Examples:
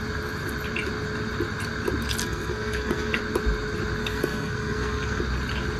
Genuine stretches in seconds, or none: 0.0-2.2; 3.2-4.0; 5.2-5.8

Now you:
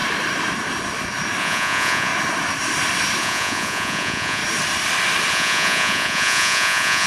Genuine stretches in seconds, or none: 0.0-1.4; 2.1-3.2; 4.4-5.3

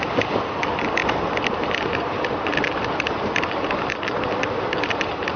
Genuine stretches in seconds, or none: 0.0-5.4

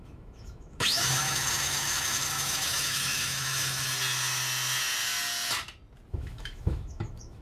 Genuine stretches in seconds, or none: 3.9-6.1

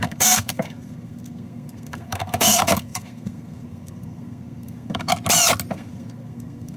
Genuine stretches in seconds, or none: 5.1-5.7

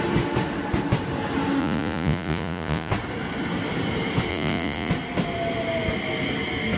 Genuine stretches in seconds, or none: 0.0-1.6; 2.9-4.3; 4.9-6.8